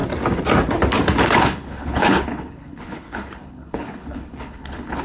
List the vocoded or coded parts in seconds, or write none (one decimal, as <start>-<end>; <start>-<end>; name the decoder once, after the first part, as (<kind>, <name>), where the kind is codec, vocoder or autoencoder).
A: 1.3-5.0 (codec, HILCodec)